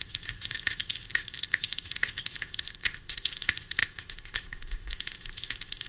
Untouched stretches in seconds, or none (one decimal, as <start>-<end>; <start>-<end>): none